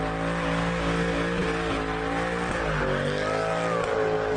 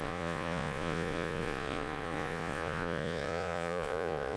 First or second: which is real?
first